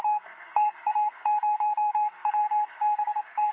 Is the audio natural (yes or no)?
no